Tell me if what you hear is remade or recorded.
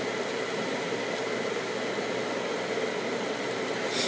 recorded